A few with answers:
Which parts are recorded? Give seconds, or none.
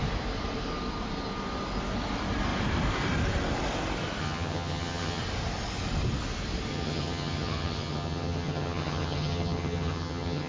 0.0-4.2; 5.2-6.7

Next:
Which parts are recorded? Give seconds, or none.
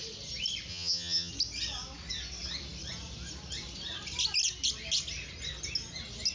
0.0-0.7; 1.3-6.3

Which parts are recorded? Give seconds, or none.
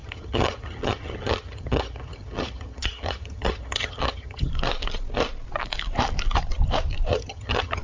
4.5-7.1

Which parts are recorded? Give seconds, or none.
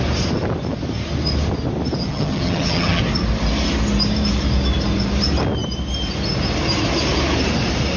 0.0-2.0; 3.0-8.0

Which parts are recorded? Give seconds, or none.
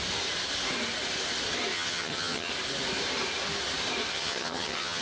0.0-1.7; 2.5-4.1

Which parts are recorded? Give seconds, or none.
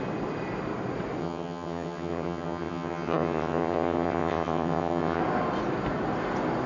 0.0-1.2; 5.2-6.7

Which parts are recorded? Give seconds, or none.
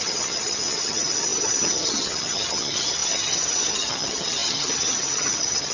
none